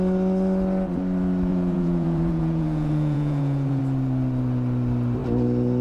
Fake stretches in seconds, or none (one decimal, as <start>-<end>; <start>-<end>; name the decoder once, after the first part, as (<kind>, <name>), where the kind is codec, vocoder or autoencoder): 1.5-3.8 (vocoder, Vocos)